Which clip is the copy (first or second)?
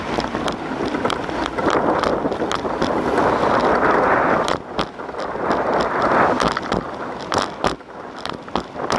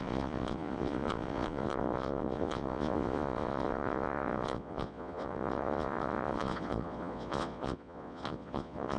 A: second